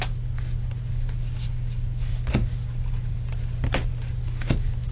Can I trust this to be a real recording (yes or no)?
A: yes